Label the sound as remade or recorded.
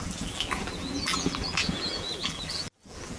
remade